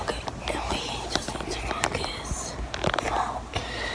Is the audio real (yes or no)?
yes